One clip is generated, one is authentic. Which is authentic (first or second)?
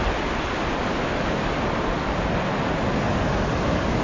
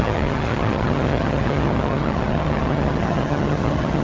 first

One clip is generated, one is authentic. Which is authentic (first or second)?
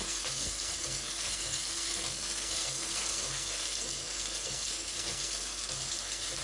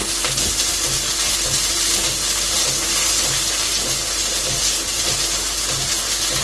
second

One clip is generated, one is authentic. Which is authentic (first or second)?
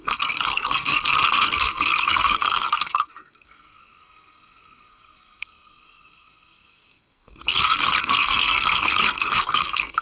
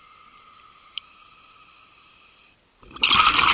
second